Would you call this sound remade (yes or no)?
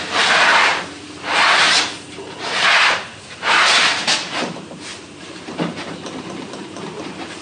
yes